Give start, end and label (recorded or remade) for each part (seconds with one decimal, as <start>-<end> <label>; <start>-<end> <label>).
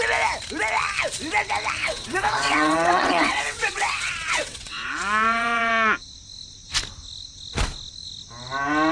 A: 0.0-1.8 recorded; 1.8-5.7 remade; 5.7-8.9 recorded